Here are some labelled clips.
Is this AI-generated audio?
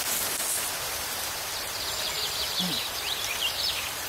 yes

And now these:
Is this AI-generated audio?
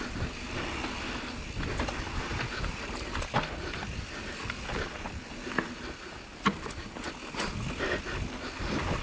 no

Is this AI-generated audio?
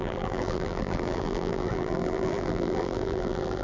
yes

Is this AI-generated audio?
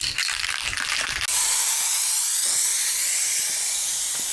no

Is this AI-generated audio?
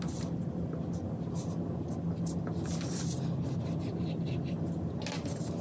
no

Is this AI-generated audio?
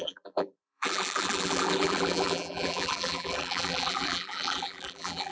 yes